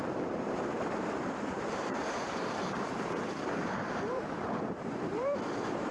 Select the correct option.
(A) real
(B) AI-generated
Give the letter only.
B